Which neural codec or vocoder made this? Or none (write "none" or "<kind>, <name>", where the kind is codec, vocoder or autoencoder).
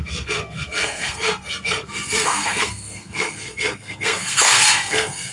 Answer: codec, SNAC